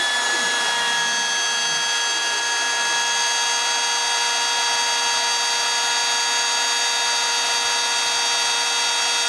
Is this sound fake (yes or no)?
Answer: no